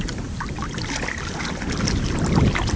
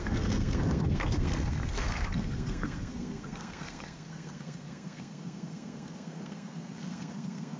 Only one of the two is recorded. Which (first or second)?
first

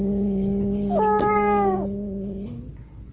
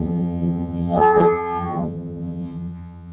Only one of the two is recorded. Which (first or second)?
first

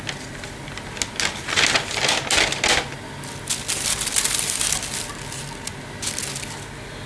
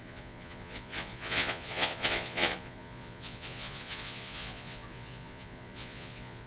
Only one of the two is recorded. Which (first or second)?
first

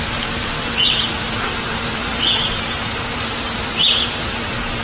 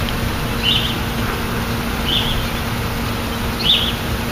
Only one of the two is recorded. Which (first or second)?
second